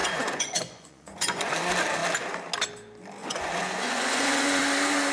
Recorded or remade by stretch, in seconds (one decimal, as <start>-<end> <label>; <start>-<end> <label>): 0.0-1.5 remade; 1.5-3.2 recorded; 3.2-4.6 remade; 4.6-5.1 recorded